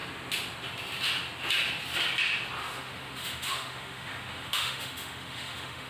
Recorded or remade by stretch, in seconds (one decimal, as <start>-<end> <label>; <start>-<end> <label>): 0.0-2.6 recorded; 2.6-5.9 remade